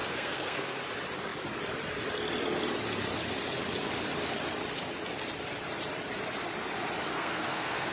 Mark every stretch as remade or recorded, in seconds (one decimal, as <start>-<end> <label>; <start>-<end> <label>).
0.0-0.8 remade; 0.8-7.1 recorded; 7.1-7.9 remade